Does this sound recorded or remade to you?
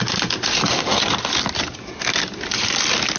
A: recorded